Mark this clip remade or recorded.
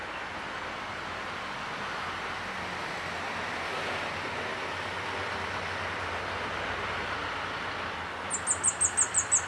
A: recorded